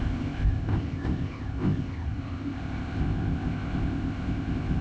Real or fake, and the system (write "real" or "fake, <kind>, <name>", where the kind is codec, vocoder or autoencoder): fake, codec, ZipCodec